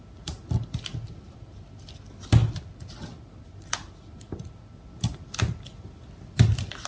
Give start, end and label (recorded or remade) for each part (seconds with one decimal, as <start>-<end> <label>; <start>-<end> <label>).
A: 0.0-6.9 recorded